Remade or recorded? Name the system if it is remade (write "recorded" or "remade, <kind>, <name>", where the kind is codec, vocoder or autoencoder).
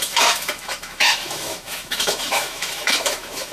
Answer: remade, autoencoder, DAC-VAE